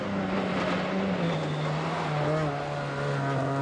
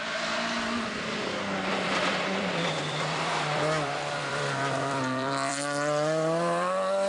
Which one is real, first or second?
first